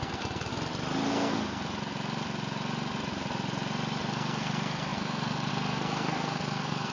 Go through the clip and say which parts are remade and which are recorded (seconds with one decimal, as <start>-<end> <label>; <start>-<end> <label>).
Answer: 0.0-0.5 remade; 0.5-1.1 recorded; 1.1-1.6 remade; 1.6-4.1 recorded; 4.1-6.9 remade